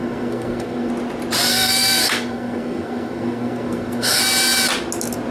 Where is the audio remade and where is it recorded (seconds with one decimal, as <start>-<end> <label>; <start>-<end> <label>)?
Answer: 0.0-0.9 remade; 0.9-1.5 recorded; 1.5-4.2 remade; 4.2-5.3 recorded